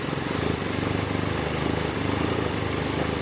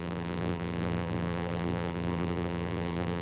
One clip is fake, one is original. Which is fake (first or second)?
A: second